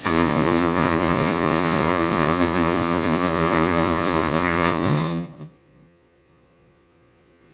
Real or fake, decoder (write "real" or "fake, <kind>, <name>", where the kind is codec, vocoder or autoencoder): fake, vocoder, Vocos